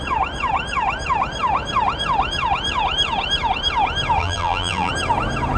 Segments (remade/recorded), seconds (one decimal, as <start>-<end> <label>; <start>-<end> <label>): 0.0-4.2 recorded; 4.2-4.9 remade; 4.9-5.6 recorded

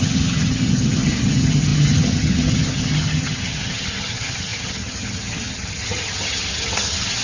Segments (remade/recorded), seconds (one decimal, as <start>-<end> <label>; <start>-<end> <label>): 0.0-7.2 remade

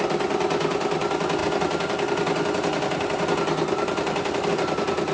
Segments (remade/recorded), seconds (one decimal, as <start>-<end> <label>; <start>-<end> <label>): 0.0-5.1 recorded

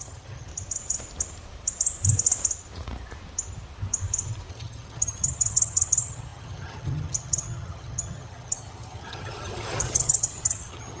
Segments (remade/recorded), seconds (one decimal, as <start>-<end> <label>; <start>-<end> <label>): 0.0-0.5 remade; 0.5-4.5 recorded; 4.5-11.0 remade

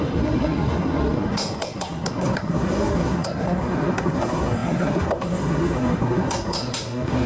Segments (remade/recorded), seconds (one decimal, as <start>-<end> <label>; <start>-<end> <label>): 0.0-7.3 remade

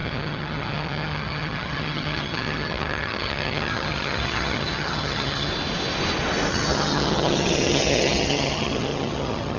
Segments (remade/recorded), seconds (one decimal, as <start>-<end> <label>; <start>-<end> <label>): 0.0-5.5 remade; 5.5-6.5 recorded; 6.5-9.6 remade